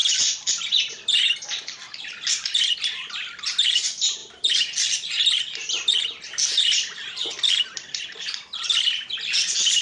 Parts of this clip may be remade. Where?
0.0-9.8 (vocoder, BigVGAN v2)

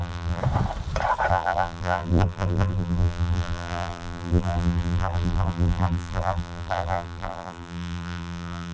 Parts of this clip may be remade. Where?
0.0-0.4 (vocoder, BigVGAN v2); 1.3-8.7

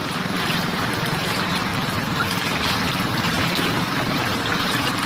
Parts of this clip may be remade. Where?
0.0-5.1 (vocoder, BigVGAN v2)

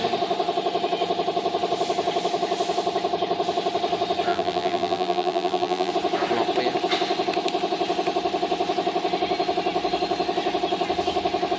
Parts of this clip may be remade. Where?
4.3-5.9 (vocoder, BigVGAN v2)